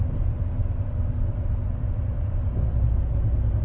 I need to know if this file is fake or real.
real